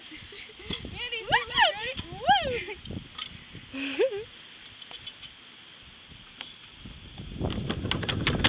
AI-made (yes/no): no